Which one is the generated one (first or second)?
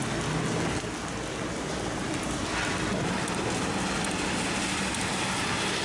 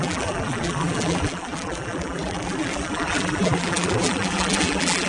second